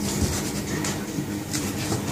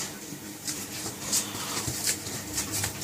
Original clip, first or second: first